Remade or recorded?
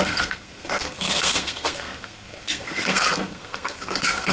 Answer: remade